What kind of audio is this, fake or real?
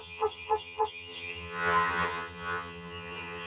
fake